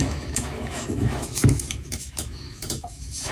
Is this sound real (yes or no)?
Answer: no